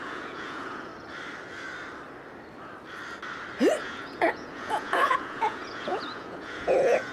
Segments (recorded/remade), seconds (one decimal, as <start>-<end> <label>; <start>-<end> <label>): 0.0-0.9 remade; 0.9-3.8 recorded; 3.8-7.1 remade